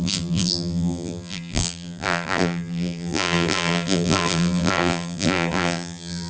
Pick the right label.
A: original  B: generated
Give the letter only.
B